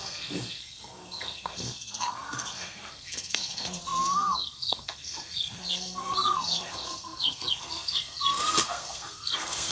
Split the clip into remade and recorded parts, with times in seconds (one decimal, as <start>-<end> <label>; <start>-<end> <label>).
0.0-9.7 remade